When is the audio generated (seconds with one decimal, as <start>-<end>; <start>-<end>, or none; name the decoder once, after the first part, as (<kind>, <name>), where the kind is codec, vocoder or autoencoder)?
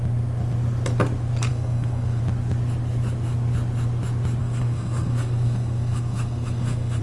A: 1.5-2.2 (codec, SNAC); 4.4-7.0